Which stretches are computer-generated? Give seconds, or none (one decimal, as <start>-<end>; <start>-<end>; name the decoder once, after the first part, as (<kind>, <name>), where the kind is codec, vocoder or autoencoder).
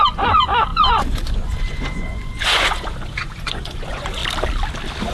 0.0-4.2 (vocoder, Vocos)